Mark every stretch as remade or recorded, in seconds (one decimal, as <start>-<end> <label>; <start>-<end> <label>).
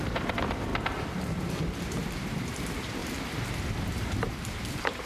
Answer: 0.0-0.7 remade; 0.7-1.3 recorded; 1.3-3.0 remade; 3.0-3.8 recorded; 3.8-5.1 remade